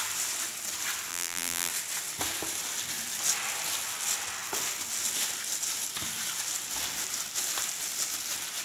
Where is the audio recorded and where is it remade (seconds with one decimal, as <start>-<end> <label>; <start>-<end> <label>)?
0.0-1.1 recorded; 1.1-1.7 remade; 1.7-8.6 recorded